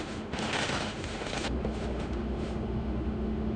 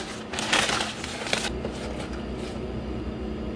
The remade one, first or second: first